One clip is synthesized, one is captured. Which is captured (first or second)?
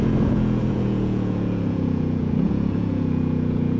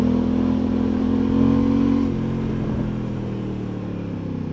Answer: second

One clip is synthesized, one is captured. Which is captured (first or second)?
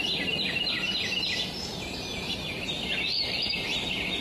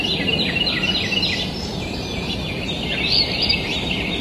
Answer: first